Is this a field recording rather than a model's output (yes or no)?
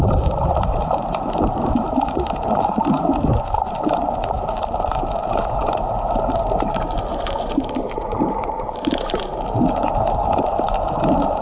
no